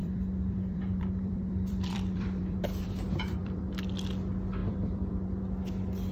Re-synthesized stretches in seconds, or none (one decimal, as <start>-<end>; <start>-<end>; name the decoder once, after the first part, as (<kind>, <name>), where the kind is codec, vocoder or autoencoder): 0.0-3.7 (vocoder, BigVGAN v2); 4.6-5.4